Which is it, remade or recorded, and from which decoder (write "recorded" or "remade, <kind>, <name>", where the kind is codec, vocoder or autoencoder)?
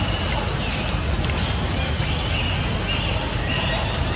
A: recorded